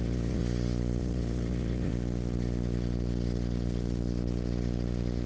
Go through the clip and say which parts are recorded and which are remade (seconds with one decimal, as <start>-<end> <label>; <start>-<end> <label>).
0.0-0.4 remade; 0.4-1.0 recorded; 1.0-1.9 remade; 1.9-5.3 recorded